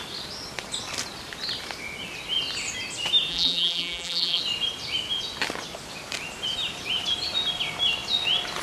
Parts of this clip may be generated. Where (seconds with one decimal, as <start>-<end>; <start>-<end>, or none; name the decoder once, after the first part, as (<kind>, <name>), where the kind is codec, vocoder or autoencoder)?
3.3-4.4 (vocoder, BigVGAN v2)